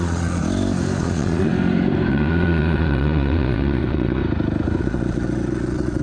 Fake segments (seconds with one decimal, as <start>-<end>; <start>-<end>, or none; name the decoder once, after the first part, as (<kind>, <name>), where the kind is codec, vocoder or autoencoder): 0.0-0.4 (vocoder, Vocos); 1.0-1.5; 2.1-4.2; 4.8-6.0

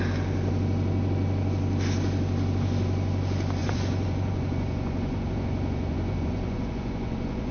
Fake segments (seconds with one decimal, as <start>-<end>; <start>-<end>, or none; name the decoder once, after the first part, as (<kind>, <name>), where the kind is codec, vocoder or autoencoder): 3.6-7.5 (vocoder, Vocos)

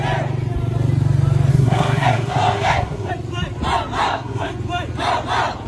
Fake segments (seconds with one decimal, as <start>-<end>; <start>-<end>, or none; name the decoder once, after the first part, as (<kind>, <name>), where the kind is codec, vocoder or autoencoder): 1.5-3.1 (codec, SNAC); 4.0-4.5

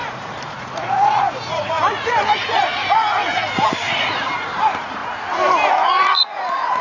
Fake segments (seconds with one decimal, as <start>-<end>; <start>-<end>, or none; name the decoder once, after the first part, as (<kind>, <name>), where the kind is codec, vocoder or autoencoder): 0.0-5.0 (vocoder, Vocos); 5.7-6.8

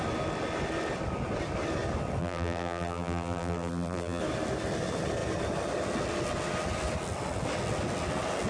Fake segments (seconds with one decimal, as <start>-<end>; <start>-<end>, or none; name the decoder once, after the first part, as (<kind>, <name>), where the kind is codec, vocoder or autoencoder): 2.2-4.2 (vocoder, BigVGAN v2)

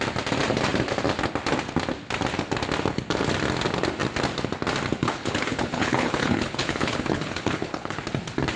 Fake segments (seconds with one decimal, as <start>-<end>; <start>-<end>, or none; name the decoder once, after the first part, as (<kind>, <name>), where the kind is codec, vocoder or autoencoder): 5.0-8.0 (codec, HILCodec)

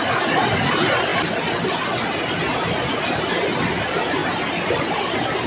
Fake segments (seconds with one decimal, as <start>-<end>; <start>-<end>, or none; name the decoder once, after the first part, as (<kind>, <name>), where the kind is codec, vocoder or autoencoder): none